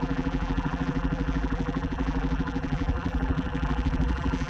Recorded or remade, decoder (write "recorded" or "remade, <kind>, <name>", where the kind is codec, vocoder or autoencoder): remade, vocoder, BigVGAN v2